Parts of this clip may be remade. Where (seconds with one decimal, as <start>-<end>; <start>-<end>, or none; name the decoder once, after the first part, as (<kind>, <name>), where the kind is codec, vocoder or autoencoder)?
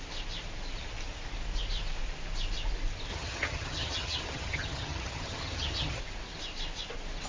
3.1-6.0 (vocoder, HiFi-GAN)